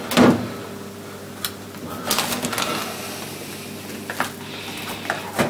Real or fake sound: real